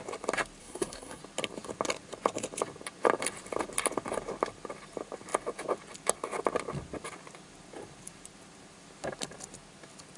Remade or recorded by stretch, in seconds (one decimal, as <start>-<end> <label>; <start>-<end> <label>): 0.0-0.6 recorded; 0.6-1.2 remade; 1.2-10.2 recorded